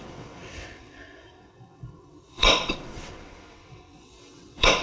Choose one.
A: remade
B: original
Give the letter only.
A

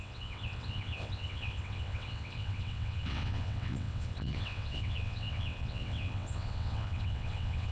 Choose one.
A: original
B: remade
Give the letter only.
B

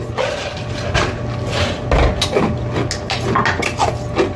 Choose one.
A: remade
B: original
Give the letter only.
B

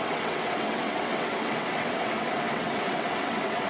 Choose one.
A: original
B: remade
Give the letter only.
B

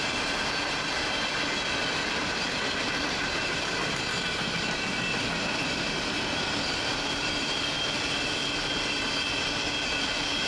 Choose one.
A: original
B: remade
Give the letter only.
A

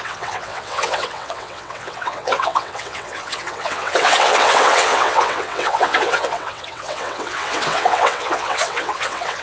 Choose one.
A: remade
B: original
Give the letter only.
A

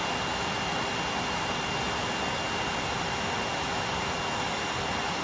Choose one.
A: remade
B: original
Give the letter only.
B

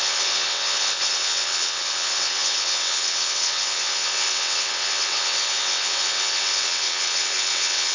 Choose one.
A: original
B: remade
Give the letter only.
B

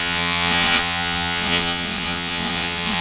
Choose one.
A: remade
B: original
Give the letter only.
A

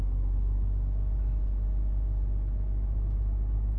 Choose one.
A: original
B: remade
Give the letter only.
A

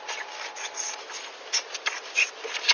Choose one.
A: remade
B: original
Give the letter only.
B